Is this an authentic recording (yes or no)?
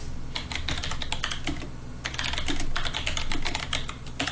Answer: yes